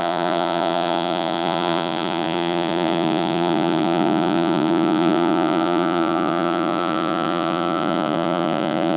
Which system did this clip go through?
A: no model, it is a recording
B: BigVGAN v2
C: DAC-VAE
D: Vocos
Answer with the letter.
D